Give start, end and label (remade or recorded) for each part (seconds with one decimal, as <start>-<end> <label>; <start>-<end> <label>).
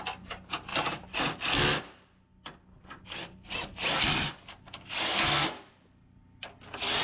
0.0-0.7 recorded; 0.7-1.2 remade; 1.2-2.3 recorded; 2.3-4.6 remade; 4.6-7.0 recorded